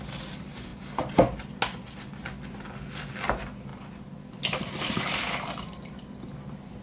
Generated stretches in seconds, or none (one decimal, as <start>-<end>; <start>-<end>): 0.0-0.7; 3.1-6.8